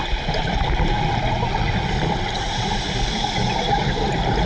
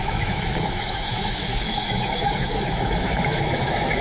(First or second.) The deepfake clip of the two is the second